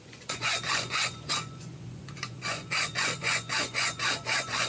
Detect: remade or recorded remade